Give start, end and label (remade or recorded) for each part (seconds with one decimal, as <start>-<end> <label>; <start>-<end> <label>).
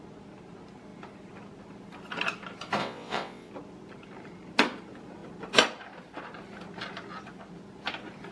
0.0-2.8 recorded; 2.8-3.5 remade; 3.5-8.3 recorded